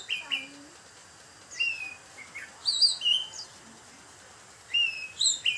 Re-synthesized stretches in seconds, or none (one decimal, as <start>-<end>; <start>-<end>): none